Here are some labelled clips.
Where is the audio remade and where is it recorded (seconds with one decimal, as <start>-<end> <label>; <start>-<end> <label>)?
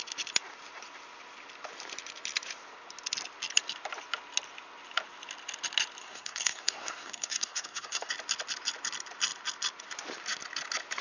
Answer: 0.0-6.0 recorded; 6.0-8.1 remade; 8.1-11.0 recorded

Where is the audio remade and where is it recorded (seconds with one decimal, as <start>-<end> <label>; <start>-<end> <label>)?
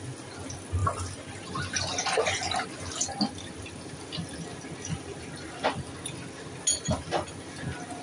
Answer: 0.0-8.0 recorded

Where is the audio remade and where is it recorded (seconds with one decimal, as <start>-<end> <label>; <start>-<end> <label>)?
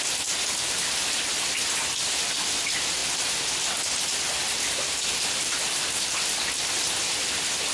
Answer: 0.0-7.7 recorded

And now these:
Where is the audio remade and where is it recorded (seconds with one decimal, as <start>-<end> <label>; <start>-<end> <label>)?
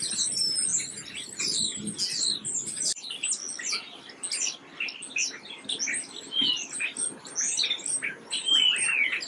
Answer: 0.0-9.3 recorded